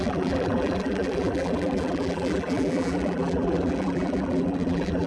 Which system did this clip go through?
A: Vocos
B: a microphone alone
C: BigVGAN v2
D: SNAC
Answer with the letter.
C